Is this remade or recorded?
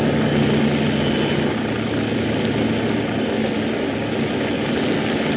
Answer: recorded